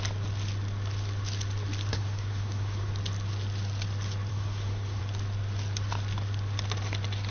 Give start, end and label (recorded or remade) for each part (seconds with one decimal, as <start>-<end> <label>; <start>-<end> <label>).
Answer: 0.0-1.9 recorded; 1.9-2.9 remade; 2.9-4.3 recorded; 4.3-5.0 remade; 5.0-7.3 recorded